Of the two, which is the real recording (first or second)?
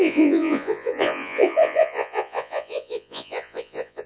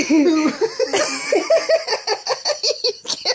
second